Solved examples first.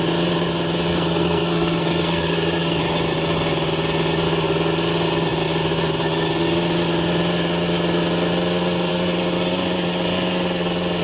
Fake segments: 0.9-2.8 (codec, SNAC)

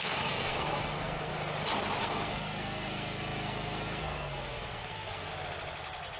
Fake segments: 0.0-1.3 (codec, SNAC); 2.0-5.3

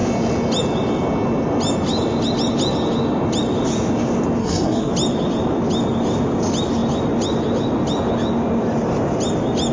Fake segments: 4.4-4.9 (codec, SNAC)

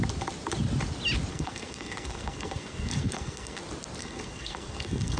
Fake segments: 1.3-3.6 (codec, SNAC); 4.0-5.2

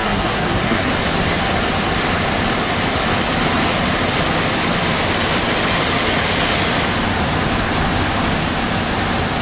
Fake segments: 0.0-0.9 (codec, SNAC)

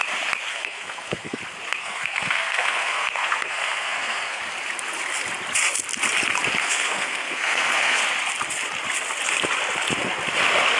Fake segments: 0.5-1.4 (codec, SNAC); 1.8-4.4; 6.6-8.0